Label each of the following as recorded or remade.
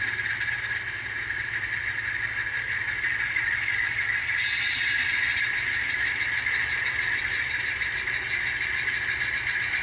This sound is recorded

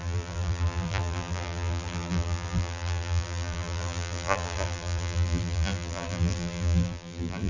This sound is remade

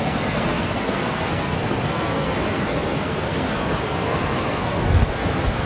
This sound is remade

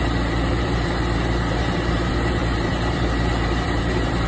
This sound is remade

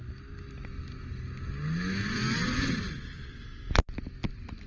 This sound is recorded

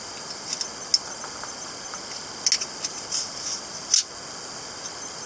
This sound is recorded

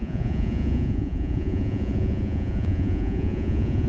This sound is remade